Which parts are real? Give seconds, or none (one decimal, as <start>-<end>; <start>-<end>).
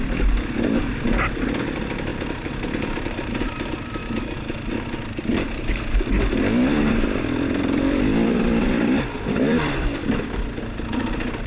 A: 4.0-4.7